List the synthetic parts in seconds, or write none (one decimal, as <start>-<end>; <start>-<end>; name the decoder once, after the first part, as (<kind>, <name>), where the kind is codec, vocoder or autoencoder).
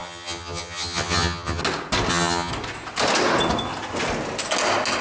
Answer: 0.0-1.6 (vocoder, HiFi-GAN); 2.1-2.5